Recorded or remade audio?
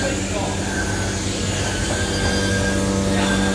recorded